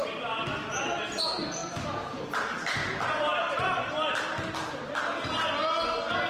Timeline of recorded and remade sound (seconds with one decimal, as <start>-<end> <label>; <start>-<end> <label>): 0.0-6.3 recorded